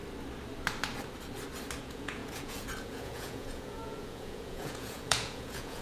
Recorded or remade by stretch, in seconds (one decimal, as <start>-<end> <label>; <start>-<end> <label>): 0.0-1.8 recorded; 1.8-5.8 remade